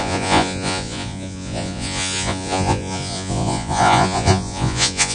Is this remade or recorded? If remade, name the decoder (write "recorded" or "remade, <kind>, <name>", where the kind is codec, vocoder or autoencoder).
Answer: remade, vocoder, Vocos